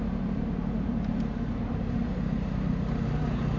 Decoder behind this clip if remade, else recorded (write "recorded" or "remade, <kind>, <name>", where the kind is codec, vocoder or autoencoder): remade, vocoder, BigVGAN v2